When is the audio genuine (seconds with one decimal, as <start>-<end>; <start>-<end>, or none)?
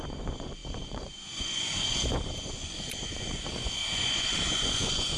none